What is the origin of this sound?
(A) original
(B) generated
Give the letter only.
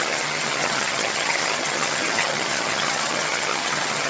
B